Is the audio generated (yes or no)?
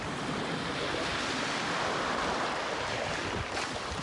no